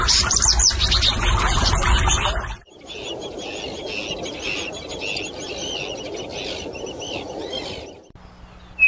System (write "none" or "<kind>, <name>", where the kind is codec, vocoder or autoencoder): none